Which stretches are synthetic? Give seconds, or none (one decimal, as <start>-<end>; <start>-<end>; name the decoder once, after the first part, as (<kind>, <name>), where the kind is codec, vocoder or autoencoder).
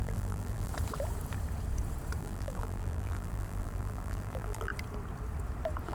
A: 0.0-0.7 (vocoder, BigVGAN v2); 2.2-4.7